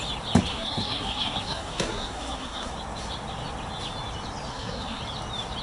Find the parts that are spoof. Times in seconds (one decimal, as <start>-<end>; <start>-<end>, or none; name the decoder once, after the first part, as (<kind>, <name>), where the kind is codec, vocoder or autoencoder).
0.5-2.7 (codec, SNAC); 4.5-5.0